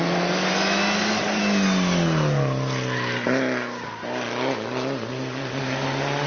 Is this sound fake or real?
real